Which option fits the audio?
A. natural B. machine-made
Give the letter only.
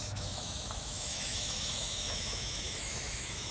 B